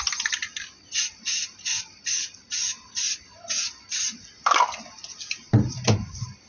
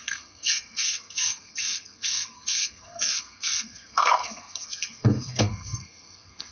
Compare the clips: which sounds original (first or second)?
first